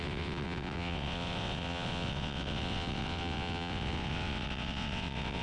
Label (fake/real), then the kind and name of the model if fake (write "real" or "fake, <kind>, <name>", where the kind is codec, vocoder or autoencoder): fake, vocoder, WaveNeXt